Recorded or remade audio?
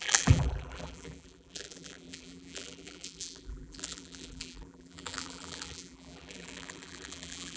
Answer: remade